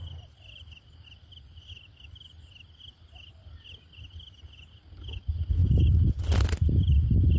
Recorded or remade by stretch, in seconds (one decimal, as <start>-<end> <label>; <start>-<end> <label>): 0.0-7.4 recorded